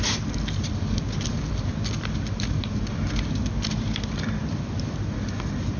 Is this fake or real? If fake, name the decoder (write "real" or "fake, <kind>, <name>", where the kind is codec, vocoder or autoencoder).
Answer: real